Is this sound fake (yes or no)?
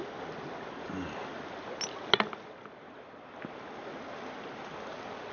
no